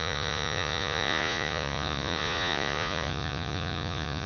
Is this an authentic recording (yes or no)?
no